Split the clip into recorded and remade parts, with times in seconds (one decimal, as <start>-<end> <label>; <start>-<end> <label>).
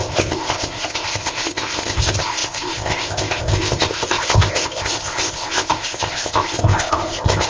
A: 0.0-7.5 remade